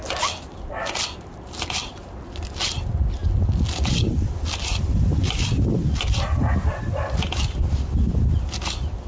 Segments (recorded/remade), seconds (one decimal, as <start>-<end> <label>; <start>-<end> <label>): 0.0-9.1 recorded